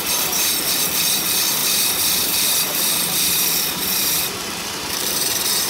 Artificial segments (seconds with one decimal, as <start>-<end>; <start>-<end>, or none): 0.0-5.7